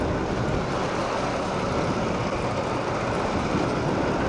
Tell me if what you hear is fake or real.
real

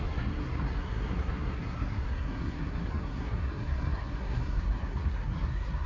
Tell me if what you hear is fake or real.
fake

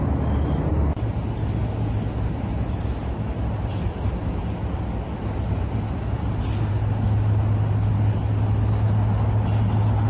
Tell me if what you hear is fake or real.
real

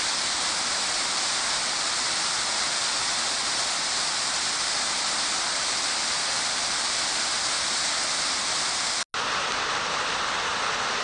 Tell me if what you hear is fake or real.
real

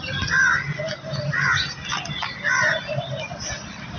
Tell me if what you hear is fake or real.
real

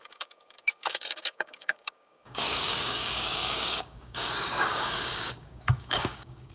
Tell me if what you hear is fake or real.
fake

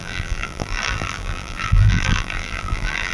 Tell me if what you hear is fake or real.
fake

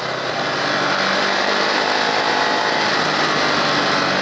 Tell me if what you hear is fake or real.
real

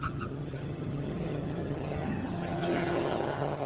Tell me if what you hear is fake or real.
fake